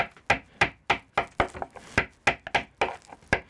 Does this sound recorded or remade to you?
recorded